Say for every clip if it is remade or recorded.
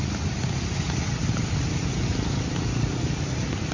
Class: recorded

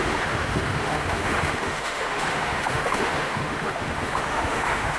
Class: remade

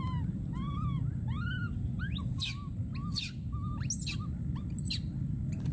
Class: recorded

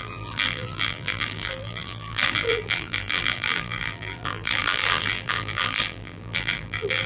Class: remade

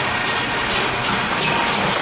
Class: recorded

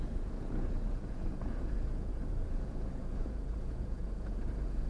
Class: remade